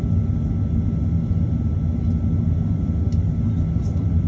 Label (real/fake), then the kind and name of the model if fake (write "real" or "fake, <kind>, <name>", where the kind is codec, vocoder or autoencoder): real